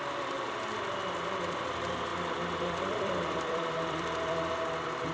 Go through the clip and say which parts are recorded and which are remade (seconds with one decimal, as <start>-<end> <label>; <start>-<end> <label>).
0.0-2.1 recorded; 2.1-4.5 remade; 4.5-5.1 recorded